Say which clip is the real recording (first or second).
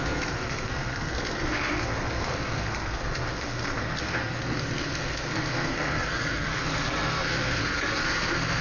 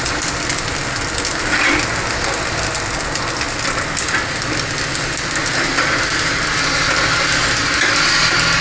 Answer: second